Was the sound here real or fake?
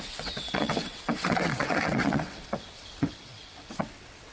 fake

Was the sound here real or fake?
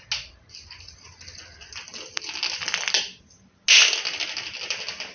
real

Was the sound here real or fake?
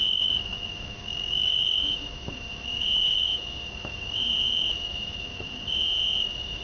fake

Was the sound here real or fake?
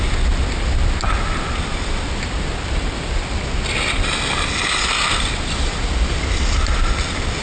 real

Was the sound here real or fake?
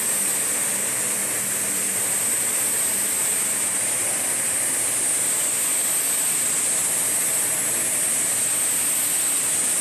real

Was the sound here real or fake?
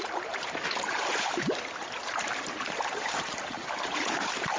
fake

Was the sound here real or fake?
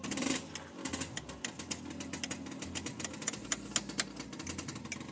real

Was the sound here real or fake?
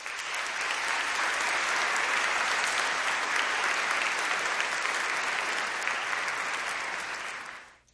real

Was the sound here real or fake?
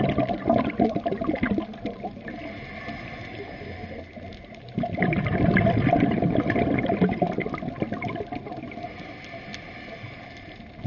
real